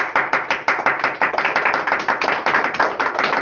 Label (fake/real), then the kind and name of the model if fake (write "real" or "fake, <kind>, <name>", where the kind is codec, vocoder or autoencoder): real